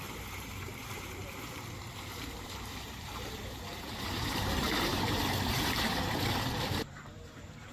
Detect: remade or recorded remade